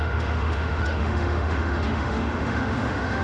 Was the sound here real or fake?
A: fake